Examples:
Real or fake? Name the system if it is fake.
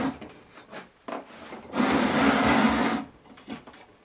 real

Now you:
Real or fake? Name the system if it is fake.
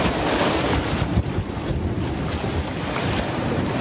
real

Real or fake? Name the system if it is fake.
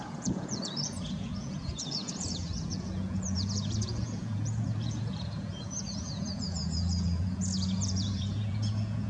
fake, vocoder, Vocos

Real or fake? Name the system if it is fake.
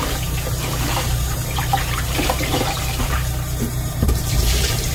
fake, vocoder, BigVGAN v2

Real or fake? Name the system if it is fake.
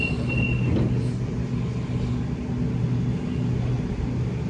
real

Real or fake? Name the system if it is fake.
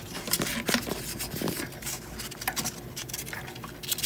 real